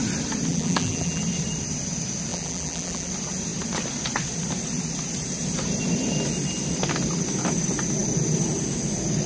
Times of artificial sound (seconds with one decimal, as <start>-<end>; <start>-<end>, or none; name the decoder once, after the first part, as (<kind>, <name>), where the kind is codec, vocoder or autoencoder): 0.5-1.2 (vocoder, BigVGAN v2); 2.3-3.1